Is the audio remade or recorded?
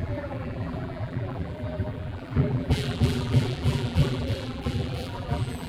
remade